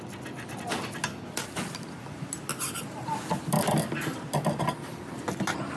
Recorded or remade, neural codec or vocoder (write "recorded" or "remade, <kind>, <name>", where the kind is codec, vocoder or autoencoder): recorded